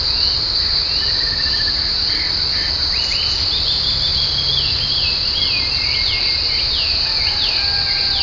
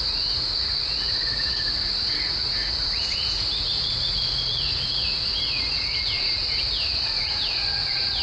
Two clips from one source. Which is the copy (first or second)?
second